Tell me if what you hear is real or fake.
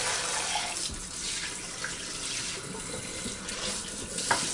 real